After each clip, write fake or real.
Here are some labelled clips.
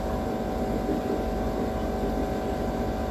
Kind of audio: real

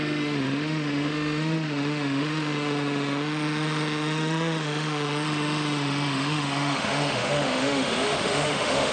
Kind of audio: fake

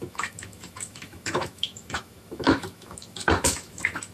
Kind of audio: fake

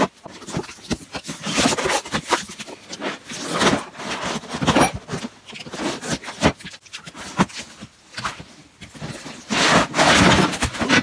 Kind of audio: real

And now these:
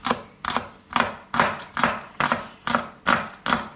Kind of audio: real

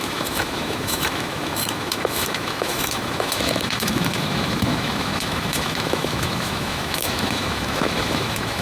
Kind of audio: fake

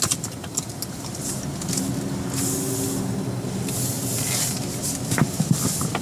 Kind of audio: real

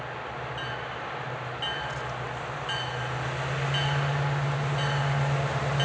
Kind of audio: real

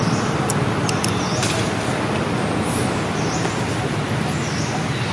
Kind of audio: real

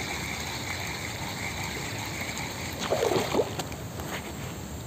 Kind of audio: real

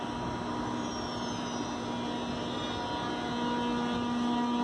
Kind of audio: real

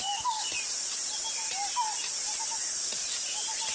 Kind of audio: real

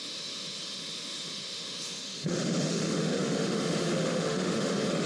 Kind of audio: fake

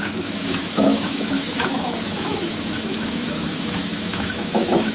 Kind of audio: fake